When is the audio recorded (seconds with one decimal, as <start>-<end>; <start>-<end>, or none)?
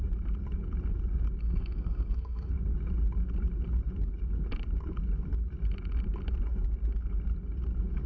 0.0-1.4; 2.5-8.1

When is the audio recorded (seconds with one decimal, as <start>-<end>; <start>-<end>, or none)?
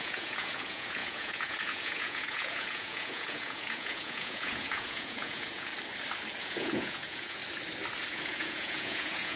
5.7-6.4; 7.4-8.1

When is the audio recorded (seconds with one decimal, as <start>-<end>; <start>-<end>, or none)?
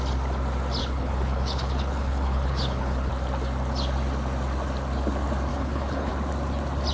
0.0-0.8; 3.1-5.5; 6.1-6.9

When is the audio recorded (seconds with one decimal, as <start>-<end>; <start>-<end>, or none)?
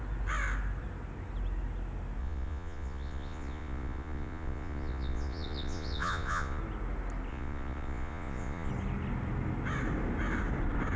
0.0-2.2; 6.6-7.3; 8.7-11.0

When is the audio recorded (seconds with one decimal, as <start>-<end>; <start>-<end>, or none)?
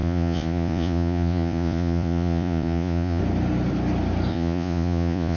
3.2-4.3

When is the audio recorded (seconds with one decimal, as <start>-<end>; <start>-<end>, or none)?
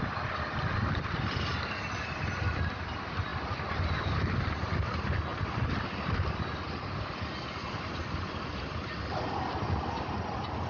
0.0-10.7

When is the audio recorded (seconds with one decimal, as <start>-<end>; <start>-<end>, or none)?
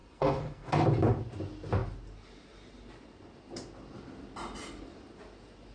0.7-5.7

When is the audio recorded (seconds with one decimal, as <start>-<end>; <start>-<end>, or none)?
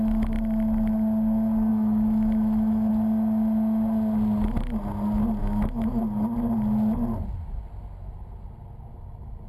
0.0-1.7; 2.9-5.4; 6.0-9.5